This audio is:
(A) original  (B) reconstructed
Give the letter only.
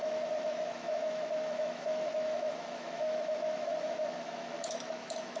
B